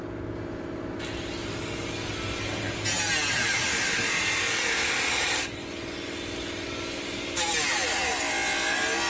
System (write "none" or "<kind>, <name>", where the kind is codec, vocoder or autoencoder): none